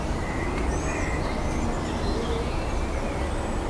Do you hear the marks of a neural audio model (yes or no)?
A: no